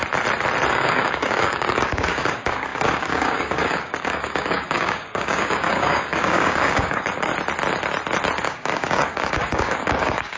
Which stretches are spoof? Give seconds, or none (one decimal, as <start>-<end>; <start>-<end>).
0.7-7.3; 8.4-10.4